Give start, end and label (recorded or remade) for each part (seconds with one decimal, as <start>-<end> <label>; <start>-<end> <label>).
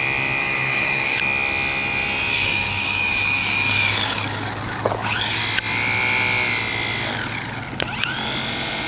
0.0-0.4 recorded; 0.4-1.2 remade; 1.2-2.3 recorded; 2.3-5.4 remade; 5.4-8.9 recorded